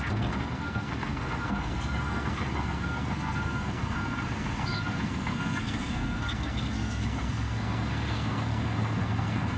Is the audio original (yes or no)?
no